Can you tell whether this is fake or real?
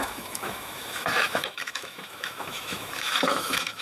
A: fake